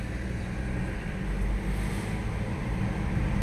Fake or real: real